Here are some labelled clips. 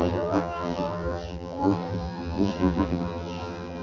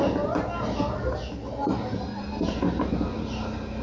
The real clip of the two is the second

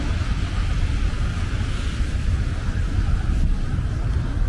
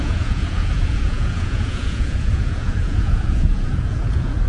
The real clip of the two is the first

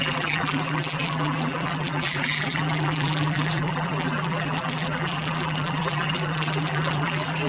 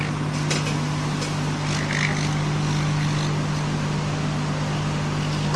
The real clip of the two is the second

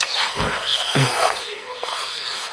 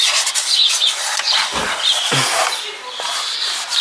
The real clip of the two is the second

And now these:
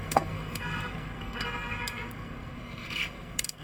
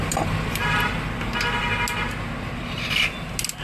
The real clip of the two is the second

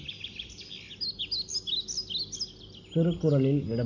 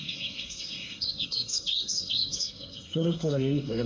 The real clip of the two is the first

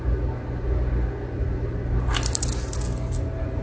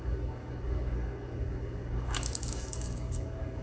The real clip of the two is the first